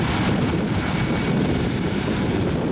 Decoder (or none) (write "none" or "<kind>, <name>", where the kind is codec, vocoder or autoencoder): none